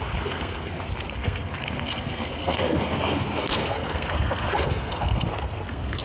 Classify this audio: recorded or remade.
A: remade